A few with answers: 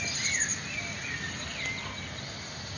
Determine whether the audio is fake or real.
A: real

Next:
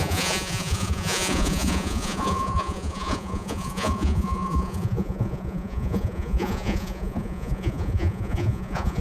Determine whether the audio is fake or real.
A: fake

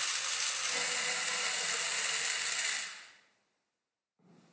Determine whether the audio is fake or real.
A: real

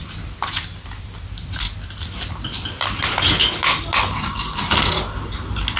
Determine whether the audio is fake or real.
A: real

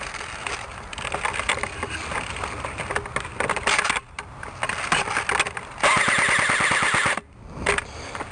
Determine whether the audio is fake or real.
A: real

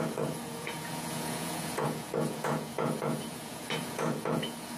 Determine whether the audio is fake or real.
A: fake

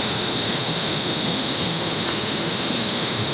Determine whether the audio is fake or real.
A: fake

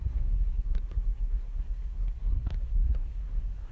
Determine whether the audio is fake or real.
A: fake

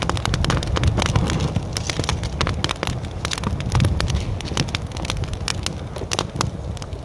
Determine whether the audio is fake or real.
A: real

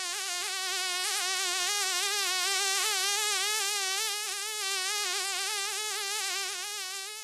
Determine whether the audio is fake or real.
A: fake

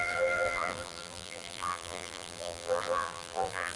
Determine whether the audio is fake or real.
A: fake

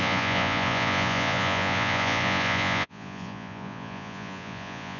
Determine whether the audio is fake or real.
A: fake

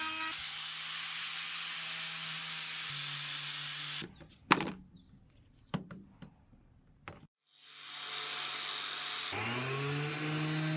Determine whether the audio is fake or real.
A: real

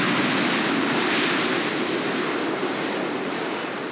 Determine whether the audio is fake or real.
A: real